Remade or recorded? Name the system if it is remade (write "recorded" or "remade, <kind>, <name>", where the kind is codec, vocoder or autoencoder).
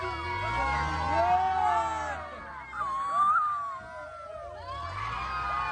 recorded